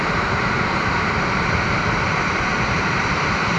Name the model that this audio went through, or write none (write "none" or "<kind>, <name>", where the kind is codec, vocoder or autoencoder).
vocoder, BigVGAN v2